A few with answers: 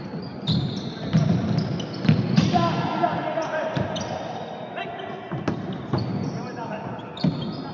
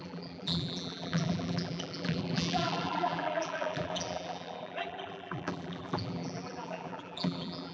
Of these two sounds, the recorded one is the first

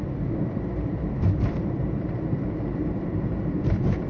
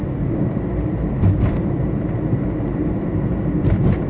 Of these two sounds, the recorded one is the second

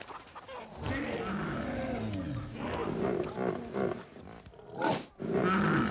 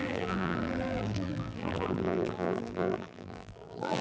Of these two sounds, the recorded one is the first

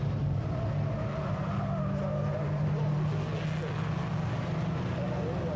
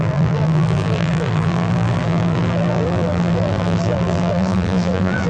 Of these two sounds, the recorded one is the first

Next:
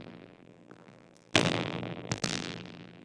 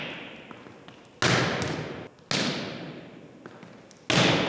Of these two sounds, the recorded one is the second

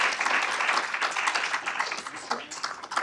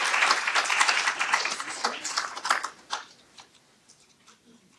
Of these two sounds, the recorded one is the first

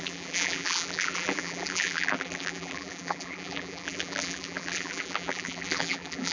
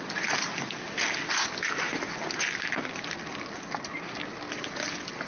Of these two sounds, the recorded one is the second